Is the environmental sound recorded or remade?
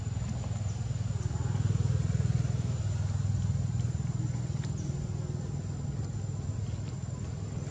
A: recorded